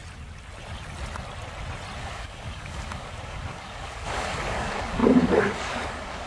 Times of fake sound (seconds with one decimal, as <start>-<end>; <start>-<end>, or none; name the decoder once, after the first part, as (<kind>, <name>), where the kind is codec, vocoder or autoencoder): 2.0-6.3 (codec, DAC)